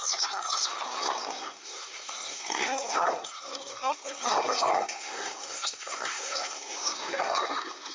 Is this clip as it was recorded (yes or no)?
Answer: no